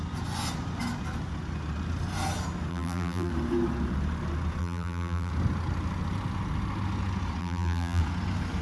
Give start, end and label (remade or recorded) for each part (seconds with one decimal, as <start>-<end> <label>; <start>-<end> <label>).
0.0-2.7 recorded; 2.7-3.3 remade; 3.3-4.6 recorded; 4.6-5.3 remade; 5.3-7.4 recorded; 7.4-8.0 remade; 8.0-8.6 recorded